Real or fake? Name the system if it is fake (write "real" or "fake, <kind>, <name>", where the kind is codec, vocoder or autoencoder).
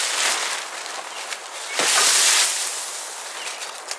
real